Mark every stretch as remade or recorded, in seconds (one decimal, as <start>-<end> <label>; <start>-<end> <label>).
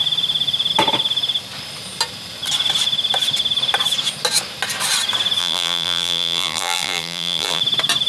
0.0-5.4 recorded; 5.4-7.6 remade; 7.6-8.1 recorded